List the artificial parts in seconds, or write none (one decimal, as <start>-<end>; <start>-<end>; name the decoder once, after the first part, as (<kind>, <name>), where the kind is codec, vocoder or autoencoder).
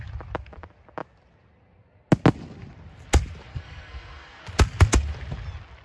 3.5-4.4 (codec, SNAC)